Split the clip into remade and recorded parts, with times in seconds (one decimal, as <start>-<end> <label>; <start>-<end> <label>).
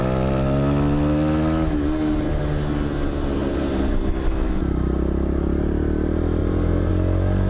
0.0-3.4 recorded; 3.4-4.1 remade; 4.1-6.4 recorded; 6.4-6.9 remade; 6.9-7.5 recorded